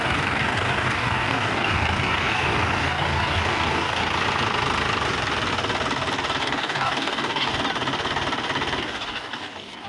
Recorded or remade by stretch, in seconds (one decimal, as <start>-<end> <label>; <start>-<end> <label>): 0.0-4.0 remade; 4.0-6.4 recorded; 6.4-7.5 remade; 7.5-8.8 recorded; 8.8-9.9 remade